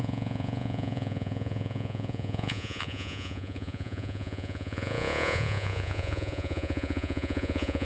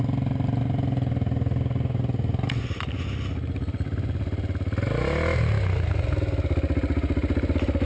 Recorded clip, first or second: second